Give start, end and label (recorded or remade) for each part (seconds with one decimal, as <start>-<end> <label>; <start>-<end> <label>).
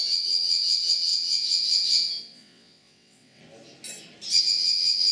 0.0-3.4 remade; 3.4-4.4 recorded; 4.4-5.1 remade